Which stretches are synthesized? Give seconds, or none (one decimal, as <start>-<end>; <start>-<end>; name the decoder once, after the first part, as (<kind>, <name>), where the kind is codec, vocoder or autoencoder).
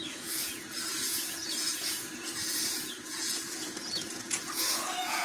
0.0-5.2 (vocoder, Vocos)